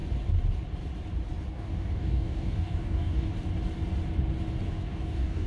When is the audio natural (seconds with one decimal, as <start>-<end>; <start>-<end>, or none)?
0.0-1.5; 3.3-4.7